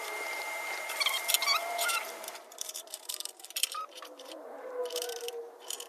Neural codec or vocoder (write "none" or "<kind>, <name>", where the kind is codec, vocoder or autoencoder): vocoder, BigVGAN v2